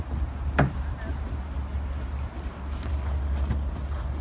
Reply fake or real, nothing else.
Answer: real